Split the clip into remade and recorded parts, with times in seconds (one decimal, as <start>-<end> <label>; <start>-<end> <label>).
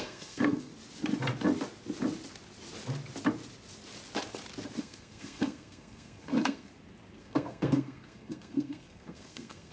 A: 0.0-0.7 remade; 0.7-4.8 recorded; 4.8-6.7 remade; 6.7-7.2 recorded; 7.2-9.7 remade